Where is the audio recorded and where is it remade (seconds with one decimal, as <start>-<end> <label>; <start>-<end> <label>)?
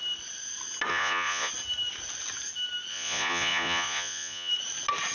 0.0-0.9 recorded; 0.9-1.5 remade; 1.5-2.9 recorded; 2.9-4.5 remade; 4.5-5.1 recorded